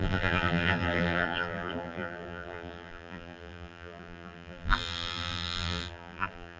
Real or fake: fake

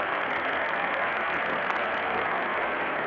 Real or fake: fake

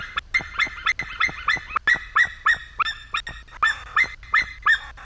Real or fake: real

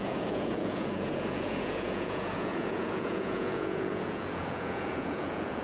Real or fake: fake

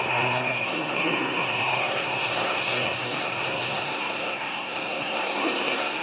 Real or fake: fake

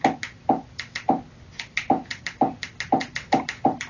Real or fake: real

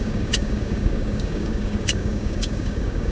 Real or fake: fake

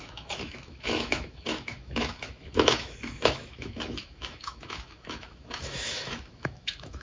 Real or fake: fake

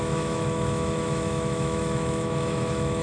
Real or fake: fake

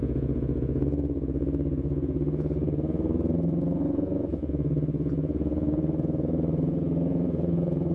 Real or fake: fake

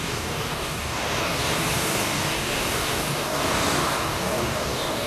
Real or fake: fake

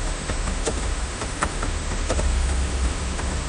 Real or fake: fake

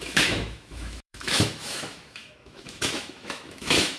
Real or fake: fake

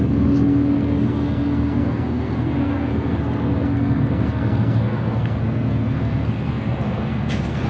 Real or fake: fake